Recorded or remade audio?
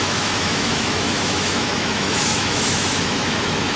remade